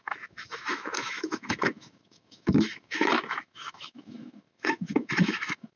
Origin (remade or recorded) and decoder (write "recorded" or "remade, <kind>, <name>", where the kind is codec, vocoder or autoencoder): remade, autoencoder, DAC-VAE